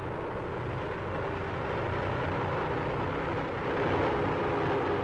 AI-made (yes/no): no